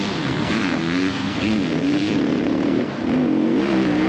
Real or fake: fake